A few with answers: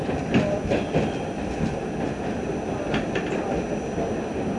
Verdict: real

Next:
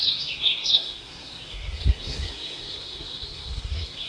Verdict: fake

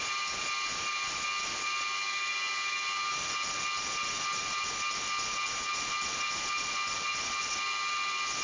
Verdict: real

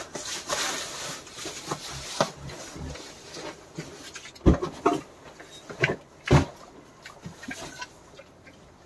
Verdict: real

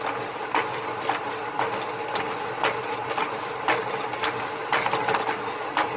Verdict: real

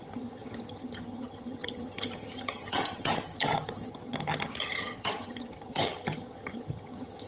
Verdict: fake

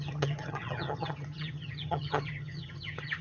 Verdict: fake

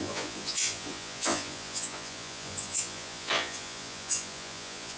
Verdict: fake